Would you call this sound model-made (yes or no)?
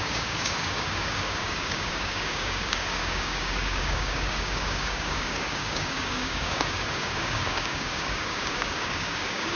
yes